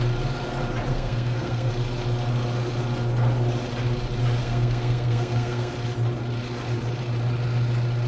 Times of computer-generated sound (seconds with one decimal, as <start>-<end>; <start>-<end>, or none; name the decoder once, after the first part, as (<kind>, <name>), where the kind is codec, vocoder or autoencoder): 0.9-1.7 (codec, SNAC); 4.4-5.7